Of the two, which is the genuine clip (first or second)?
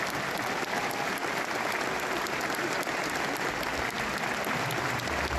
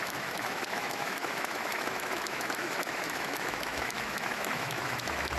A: first